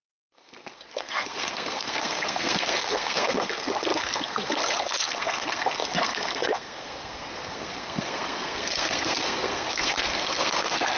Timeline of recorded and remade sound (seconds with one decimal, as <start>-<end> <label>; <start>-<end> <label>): 0.0-11.0 remade